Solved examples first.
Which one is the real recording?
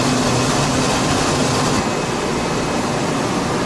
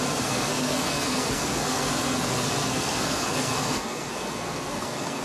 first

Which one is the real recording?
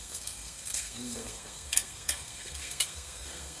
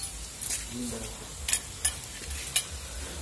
second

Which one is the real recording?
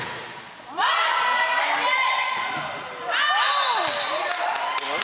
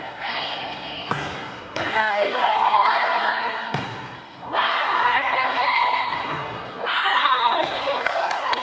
first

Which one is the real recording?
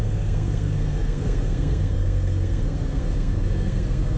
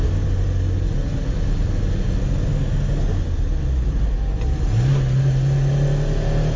second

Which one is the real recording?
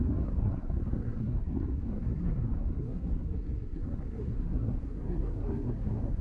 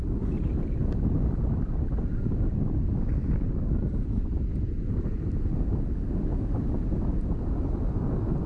second